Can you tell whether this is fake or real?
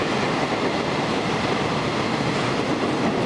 real